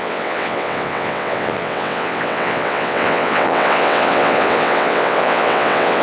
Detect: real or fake fake